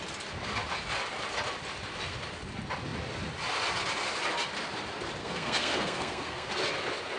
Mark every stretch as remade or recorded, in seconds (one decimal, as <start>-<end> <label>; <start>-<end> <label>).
0.0-5.2 recorded; 5.2-6.5 remade; 6.5-7.2 recorded